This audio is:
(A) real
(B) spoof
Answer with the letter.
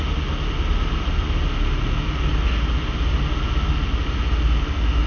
A